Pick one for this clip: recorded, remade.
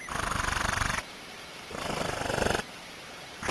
recorded